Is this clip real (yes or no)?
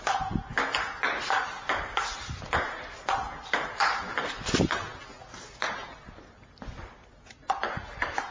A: yes